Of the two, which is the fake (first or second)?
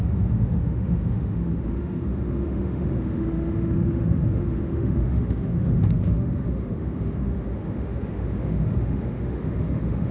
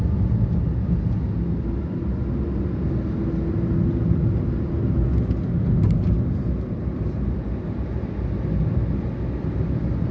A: first